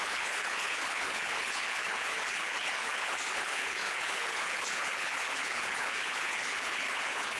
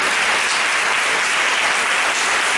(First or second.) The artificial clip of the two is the first